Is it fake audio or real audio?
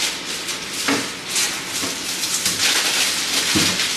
fake